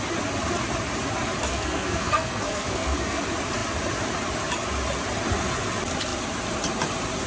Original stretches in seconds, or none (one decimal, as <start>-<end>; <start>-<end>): 0.0-1.5; 3.2-7.3